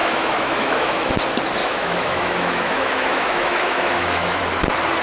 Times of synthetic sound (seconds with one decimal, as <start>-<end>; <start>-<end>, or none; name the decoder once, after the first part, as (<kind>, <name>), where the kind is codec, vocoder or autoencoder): 0.0-1.1 (autoencoder, DAC-VAE); 1.6-4.4